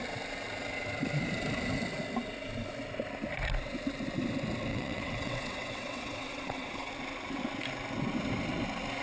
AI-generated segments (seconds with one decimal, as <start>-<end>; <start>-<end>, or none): 4.7-6.9